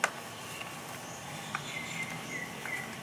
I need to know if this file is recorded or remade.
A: recorded